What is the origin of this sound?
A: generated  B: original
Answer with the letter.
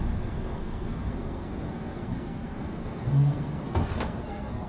A